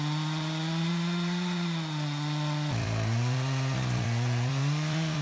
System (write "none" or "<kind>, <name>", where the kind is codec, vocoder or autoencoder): vocoder, BigVGAN v2